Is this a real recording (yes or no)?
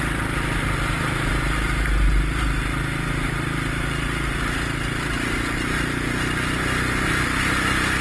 yes